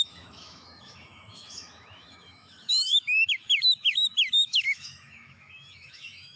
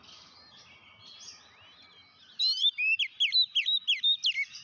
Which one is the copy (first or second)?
first